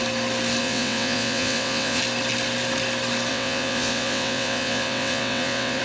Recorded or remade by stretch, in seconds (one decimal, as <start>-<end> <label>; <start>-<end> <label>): 0.0-0.6 recorded; 0.6-2.0 remade; 2.0-3.3 recorded; 3.3-5.8 remade